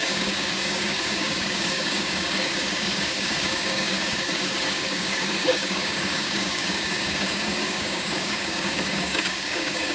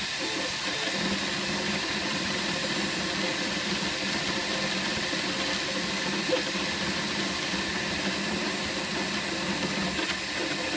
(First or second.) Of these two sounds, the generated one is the first